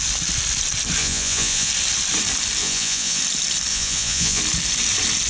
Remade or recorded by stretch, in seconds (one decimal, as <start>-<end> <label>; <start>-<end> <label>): 0.0-1.0 recorded; 1.0-1.7 remade; 1.7-2.6 recorded; 2.6-3.2 remade; 3.2-3.7 recorded; 3.7-4.4 remade; 4.4-5.3 recorded